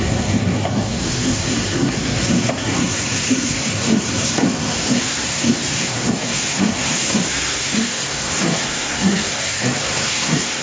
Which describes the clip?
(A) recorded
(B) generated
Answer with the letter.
B